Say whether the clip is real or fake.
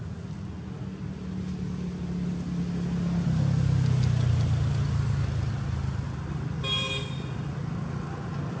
real